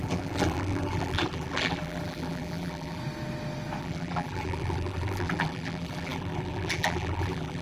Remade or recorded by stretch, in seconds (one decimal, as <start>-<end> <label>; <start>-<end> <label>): 0.0-3.0 remade; 3.0-3.8 recorded; 3.8-7.6 remade